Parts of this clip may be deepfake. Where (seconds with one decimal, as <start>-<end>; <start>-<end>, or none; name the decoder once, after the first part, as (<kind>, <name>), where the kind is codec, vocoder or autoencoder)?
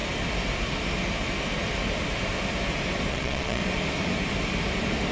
3.1-3.6 (vocoder, Vocos)